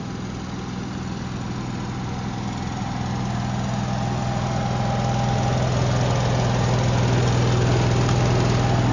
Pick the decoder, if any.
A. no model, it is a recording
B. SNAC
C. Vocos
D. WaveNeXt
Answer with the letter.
A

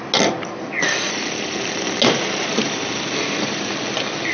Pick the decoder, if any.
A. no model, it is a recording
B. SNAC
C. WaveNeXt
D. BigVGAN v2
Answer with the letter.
A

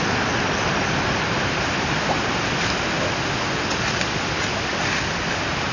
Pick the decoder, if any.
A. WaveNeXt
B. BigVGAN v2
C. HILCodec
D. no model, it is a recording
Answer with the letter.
D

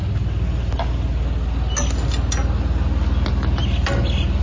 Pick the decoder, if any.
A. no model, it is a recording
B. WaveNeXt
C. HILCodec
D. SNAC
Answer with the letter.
A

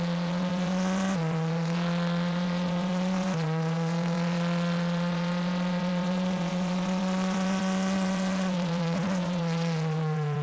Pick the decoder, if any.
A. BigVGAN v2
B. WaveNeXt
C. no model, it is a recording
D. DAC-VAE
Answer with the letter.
B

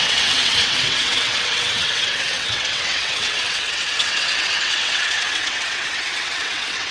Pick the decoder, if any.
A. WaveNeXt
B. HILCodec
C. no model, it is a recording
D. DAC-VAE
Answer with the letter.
A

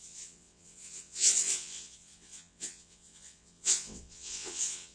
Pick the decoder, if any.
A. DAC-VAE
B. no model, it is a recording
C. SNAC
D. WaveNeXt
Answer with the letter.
D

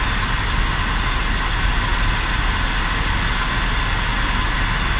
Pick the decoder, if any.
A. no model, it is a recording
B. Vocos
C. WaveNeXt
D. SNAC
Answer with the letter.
A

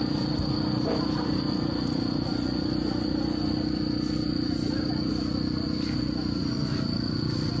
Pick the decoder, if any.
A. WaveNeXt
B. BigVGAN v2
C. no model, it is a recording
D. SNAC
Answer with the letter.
C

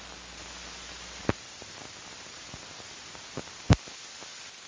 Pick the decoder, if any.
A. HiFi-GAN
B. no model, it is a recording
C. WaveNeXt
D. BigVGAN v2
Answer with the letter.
B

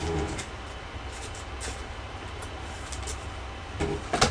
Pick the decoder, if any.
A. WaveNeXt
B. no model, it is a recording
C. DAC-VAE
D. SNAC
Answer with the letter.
B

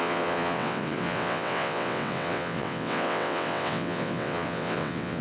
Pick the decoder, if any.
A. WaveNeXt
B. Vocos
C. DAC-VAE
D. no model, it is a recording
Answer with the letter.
A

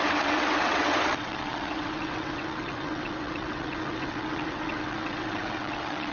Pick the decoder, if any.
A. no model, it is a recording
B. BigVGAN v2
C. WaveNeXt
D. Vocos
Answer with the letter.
C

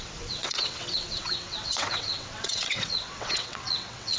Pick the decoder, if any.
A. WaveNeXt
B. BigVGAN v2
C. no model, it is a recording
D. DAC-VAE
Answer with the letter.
A